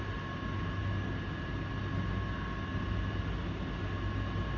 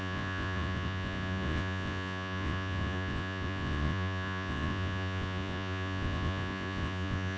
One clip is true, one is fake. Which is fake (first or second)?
second